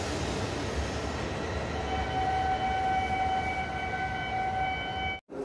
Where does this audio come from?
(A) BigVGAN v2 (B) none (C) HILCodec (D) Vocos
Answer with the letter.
B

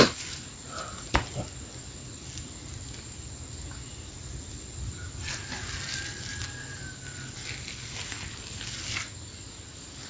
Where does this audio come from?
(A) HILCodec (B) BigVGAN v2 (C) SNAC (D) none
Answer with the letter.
D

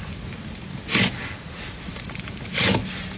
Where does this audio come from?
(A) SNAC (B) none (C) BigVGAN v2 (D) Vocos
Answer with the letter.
B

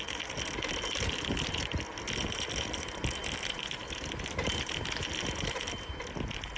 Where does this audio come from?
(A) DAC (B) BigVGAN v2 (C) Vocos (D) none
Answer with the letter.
D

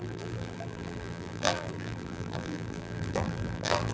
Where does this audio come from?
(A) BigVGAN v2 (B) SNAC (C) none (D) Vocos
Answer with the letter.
A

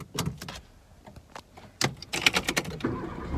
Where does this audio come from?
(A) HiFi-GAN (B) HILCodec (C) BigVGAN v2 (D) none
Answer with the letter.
D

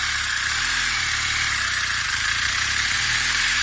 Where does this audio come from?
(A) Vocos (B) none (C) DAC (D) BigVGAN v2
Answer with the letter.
D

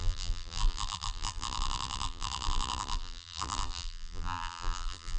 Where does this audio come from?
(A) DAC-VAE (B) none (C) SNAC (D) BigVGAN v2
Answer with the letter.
D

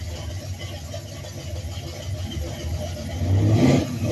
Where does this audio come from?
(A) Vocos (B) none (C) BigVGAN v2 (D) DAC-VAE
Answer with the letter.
B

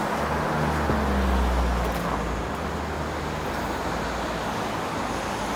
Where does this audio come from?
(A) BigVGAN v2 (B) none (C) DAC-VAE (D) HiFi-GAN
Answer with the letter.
B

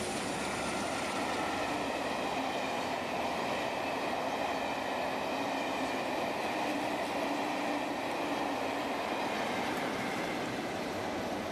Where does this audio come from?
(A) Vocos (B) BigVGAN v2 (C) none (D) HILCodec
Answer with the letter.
C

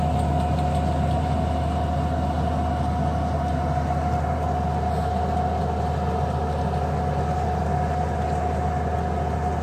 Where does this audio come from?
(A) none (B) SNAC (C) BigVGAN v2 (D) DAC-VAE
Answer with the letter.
A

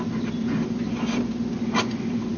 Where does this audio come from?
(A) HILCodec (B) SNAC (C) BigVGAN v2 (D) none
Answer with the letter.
D